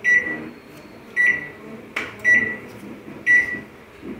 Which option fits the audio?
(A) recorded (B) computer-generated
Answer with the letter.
A